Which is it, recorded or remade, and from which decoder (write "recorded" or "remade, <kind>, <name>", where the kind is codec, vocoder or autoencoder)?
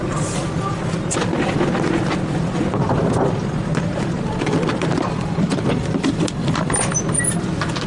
remade, vocoder, BigVGAN v2